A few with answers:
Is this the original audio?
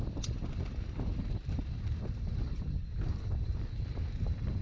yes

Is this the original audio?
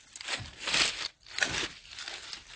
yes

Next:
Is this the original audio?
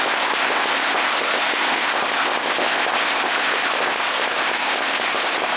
no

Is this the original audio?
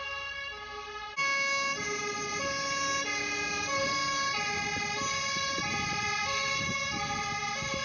yes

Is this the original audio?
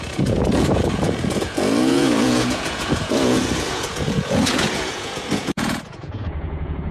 no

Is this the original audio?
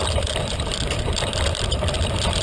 no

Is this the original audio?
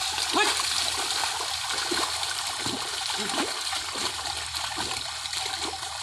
yes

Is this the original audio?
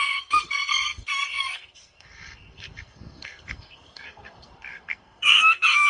no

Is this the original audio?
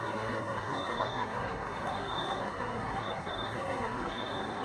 no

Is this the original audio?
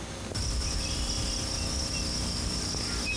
yes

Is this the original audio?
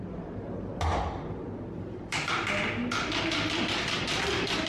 yes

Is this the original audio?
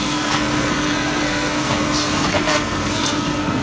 no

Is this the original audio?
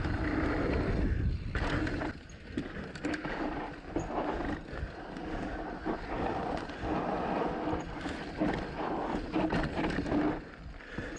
yes